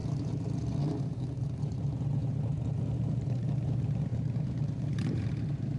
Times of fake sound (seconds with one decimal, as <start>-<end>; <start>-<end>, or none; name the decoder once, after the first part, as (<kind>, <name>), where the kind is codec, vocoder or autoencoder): 0.0-5.8 (vocoder, BigVGAN v2)